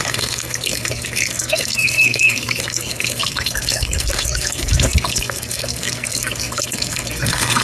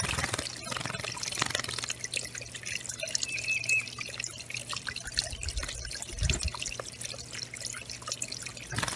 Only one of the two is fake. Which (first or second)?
first